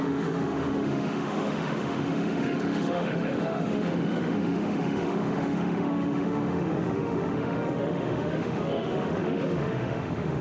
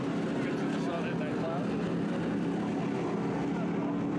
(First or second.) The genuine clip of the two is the second